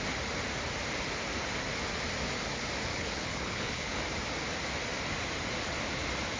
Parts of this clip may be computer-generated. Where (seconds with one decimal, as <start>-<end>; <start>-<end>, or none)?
2.9-4.0